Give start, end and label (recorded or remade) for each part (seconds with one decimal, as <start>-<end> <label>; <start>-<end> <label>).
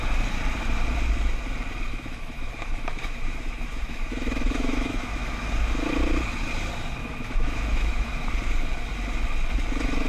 0.0-1.9 recorded; 1.9-5.5 remade; 5.5-7.0 recorded; 7.0-8.1 remade; 8.1-10.1 recorded